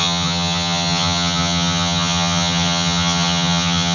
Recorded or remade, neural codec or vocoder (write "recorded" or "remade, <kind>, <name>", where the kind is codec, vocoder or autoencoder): remade, vocoder, HiFi-GAN